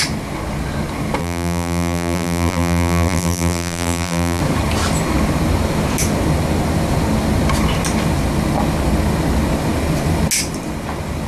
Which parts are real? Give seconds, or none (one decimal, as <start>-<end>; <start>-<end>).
0.0-1.2; 4.4-11.3